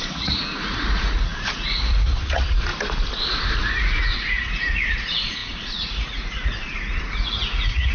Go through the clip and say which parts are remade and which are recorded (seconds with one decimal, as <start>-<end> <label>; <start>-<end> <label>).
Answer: 0.0-2.7 remade; 2.7-3.7 recorded; 3.7-7.9 remade